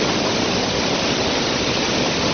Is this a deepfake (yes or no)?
no